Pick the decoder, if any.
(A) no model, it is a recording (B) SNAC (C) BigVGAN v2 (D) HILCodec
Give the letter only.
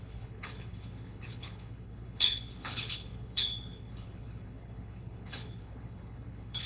D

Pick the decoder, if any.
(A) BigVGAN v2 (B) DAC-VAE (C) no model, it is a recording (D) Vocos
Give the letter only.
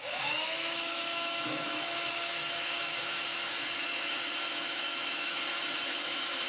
B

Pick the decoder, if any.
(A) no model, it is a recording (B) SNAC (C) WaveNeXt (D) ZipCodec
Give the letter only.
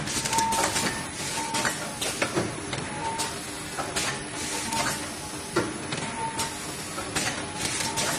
A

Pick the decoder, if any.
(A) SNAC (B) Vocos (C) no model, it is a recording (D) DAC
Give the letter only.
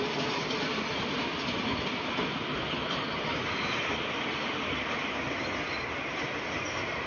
C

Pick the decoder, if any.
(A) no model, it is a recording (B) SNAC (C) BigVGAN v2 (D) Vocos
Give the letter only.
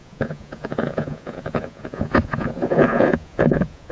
D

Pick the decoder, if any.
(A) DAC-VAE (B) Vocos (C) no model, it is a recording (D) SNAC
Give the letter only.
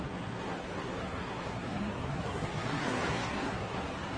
D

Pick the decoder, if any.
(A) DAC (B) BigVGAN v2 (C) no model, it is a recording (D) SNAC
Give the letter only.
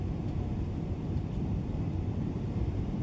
C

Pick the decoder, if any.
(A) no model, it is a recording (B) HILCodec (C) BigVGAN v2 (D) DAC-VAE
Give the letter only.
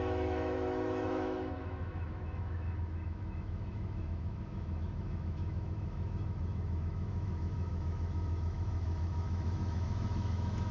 D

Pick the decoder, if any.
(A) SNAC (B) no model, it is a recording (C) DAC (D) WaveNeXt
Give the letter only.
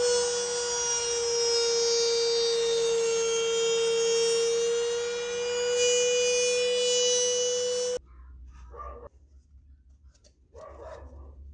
B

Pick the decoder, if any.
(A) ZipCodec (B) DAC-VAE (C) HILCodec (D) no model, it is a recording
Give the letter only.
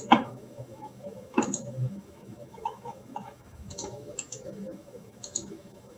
B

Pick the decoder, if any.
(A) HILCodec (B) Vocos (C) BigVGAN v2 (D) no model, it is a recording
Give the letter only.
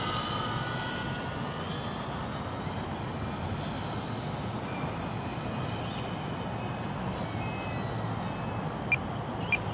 D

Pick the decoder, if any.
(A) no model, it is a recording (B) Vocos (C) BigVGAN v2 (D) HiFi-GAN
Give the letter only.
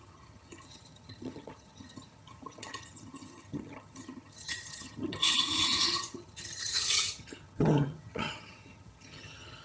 D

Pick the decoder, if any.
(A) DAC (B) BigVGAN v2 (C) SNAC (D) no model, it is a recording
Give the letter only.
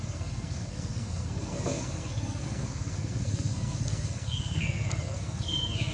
C